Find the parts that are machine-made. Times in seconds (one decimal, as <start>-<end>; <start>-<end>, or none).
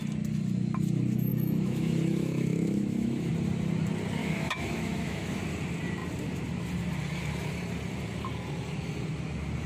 1.3-3.3; 4.2-5.4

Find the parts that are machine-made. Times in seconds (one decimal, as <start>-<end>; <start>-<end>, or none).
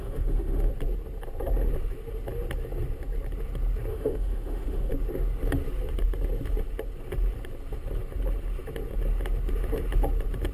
0.0-0.7; 3.9-4.9